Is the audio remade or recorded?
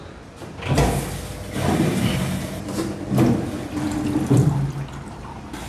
recorded